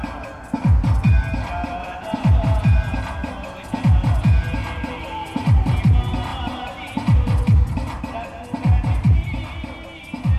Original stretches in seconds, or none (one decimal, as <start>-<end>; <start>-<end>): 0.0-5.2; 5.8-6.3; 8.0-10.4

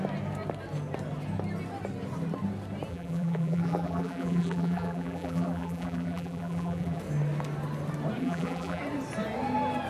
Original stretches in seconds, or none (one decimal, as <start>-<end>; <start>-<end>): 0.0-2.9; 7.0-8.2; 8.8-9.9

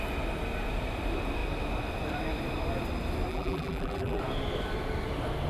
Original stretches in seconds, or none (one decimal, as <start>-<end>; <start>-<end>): 0.0-3.3; 4.2-5.5

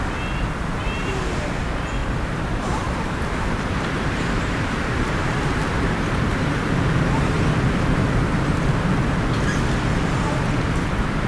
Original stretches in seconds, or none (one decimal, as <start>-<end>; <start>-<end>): 0.0-1.0; 1.6-2.0; 7.0-11.3

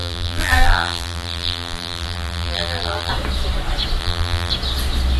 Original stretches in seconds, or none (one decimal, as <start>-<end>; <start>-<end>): 3.1-4.0; 4.5-5.2

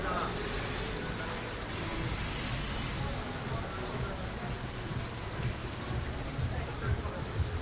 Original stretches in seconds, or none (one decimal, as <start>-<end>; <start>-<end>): 0.0-5.6

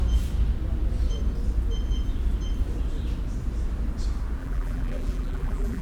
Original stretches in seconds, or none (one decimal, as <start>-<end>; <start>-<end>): 0.0-4.4